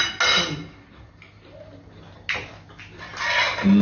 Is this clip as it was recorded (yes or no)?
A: yes